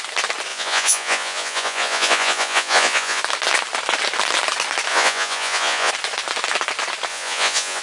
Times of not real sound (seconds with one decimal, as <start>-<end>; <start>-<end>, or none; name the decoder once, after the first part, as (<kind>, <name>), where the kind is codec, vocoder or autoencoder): 0.5-3.2 (vocoder, Vocos); 4.9-5.9; 7.1-7.8